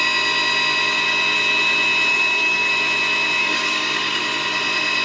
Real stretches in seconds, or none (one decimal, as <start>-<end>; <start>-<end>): 0.0-2.1; 2.7-3.4; 4.2-5.0

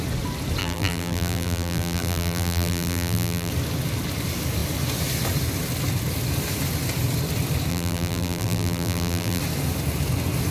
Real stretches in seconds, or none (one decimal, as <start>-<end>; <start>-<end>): 0.0-0.6; 3.5-7.7; 9.4-10.5

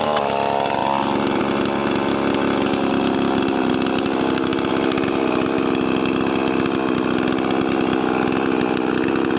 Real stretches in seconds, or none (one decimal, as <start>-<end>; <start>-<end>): 0.0-9.4

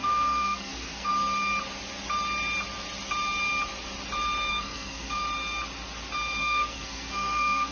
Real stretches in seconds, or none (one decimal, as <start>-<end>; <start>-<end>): 1.1-4.5; 5.2-6.4

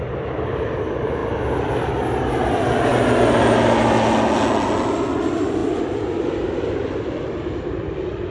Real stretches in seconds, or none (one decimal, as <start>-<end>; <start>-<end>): 1.2-2.5; 2.9-5.1

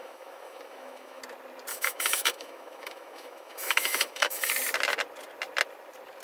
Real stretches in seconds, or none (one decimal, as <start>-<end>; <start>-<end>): 1.2-1.7; 4.5-6.2